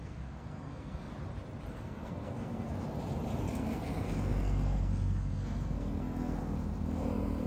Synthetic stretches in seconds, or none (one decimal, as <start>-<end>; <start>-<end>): 0.0-1.1; 1.7-2.8; 3.4-7.5